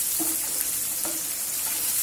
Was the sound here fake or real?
real